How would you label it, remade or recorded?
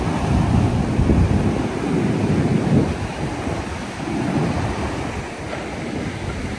recorded